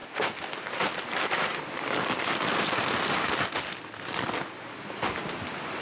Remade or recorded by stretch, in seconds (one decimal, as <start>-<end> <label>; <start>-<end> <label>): 0.0-5.8 recorded